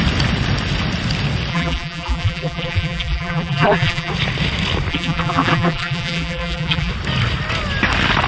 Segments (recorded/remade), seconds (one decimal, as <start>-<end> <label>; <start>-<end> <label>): 0.0-1.5 recorded; 1.5-4.1 remade; 4.1-4.9 recorded; 4.9-6.9 remade; 6.9-8.3 recorded